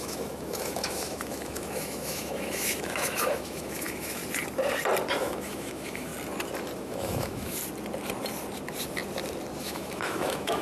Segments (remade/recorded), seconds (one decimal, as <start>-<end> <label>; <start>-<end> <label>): 0.0-4.2 remade; 4.2-5.2 recorded; 5.2-6.1 remade; 6.1-6.8 recorded; 6.8-7.6 remade; 7.6-9.6 recorded; 9.6-10.6 remade